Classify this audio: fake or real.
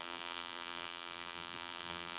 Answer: fake